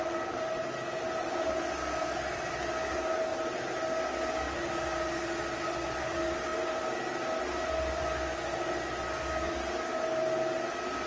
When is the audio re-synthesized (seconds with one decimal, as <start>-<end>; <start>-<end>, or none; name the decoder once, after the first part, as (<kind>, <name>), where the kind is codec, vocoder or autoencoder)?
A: none